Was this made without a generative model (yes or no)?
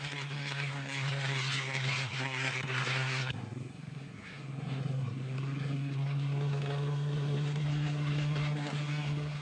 no